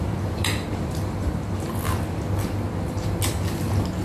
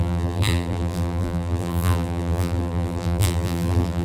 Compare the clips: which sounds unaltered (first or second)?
first